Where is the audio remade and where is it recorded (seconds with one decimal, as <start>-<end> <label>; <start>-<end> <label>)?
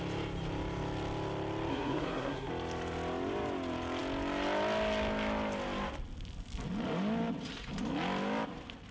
0.0-1.7 recorded; 1.7-2.5 remade; 2.5-8.9 recorded